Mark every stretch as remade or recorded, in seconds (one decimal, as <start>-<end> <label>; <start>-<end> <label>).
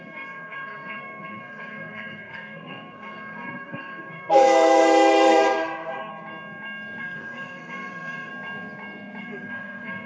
0.0-6.1 remade; 6.1-7.0 recorded; 7.0-8.3 remade; 8.3-9.2 recorded; 9.2-10.1 remade